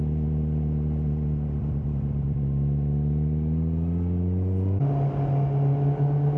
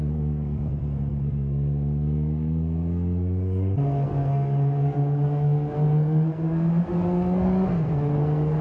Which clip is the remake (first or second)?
second